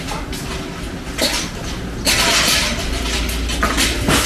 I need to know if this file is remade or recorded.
recorded